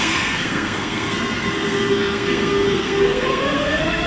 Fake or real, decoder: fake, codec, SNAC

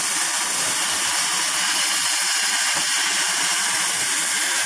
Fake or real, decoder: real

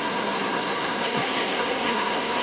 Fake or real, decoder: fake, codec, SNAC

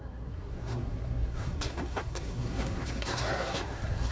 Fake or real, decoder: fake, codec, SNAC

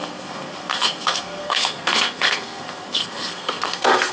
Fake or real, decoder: fake, codec, SNAC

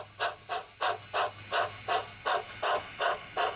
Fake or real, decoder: real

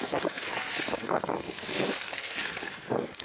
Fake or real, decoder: fake, codec, SNAC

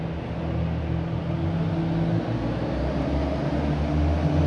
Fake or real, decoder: real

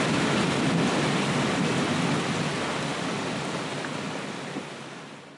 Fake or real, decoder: real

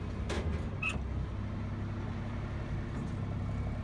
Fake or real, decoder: real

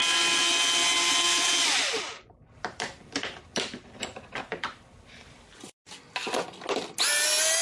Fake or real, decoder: real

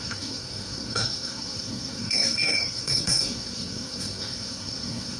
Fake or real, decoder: fake, codec, SNAC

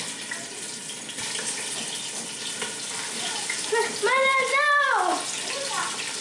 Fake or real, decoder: real